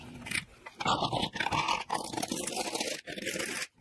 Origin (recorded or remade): recorded